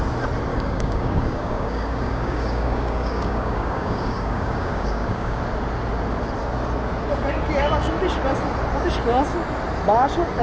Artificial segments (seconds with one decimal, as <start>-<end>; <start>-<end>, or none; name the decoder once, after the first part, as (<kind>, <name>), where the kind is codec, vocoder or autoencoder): 0.5-5.4 (codec, DAC)